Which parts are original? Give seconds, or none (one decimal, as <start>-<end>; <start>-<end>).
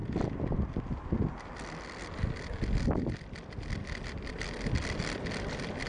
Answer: 0.0-5.9